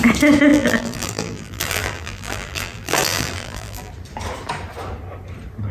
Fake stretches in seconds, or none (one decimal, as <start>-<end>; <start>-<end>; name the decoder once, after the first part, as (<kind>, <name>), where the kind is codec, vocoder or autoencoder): 0.5-3.9 (vocoder, BigVGAN v2)

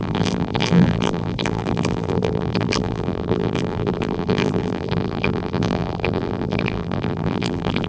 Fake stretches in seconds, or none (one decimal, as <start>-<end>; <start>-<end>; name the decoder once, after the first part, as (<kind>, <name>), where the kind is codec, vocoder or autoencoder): 0.0-7.9 (vocoder, BigVGAN v2)